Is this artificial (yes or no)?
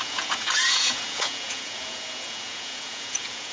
yes